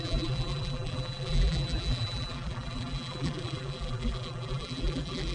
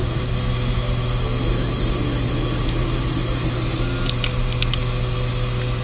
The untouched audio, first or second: second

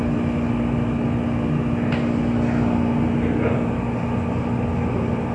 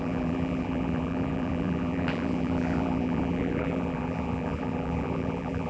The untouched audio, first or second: first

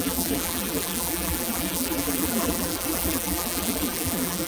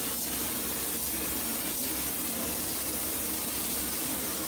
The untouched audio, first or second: second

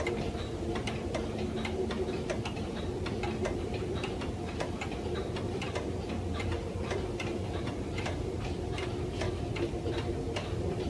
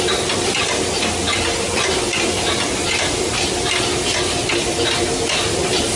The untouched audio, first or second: second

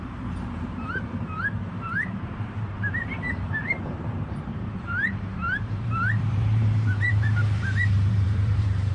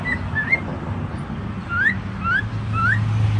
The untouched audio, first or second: second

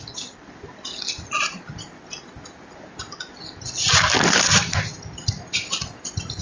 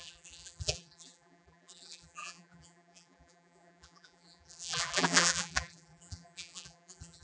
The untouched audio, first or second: first